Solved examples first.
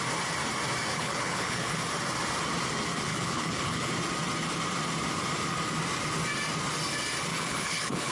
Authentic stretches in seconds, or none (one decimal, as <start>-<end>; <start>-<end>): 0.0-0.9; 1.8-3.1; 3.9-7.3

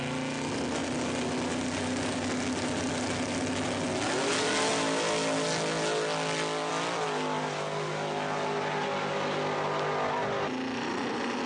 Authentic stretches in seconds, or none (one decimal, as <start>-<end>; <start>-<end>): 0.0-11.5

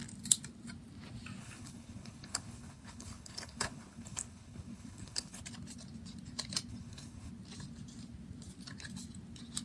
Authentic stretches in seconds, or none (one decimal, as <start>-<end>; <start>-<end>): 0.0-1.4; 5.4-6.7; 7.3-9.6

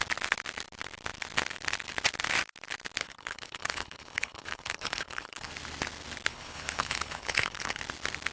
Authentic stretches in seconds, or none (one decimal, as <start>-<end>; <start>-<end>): 0.0-3.0; 5.5-6.3; 7.8-8.3

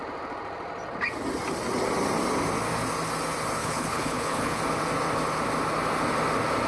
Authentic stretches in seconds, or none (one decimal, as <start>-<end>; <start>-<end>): 0.0-3.6; 4.6-6.7

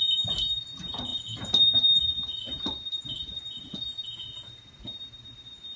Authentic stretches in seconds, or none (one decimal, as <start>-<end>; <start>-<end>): 0.0-5.8

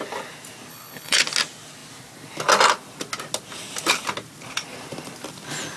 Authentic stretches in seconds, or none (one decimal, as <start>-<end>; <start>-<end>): 0.0-0.7; 1.2-5.8

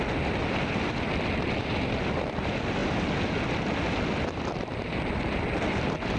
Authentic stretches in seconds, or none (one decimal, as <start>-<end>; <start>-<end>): 0.0-6.2